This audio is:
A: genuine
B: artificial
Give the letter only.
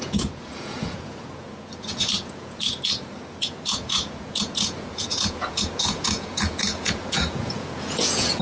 B